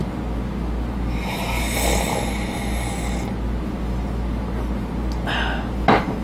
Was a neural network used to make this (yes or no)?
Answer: no